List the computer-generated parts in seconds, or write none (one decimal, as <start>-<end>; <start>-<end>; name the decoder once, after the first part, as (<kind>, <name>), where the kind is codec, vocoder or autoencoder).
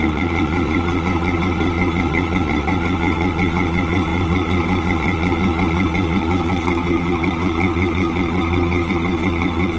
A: 0.0-9.8 (vocoder, Vocos)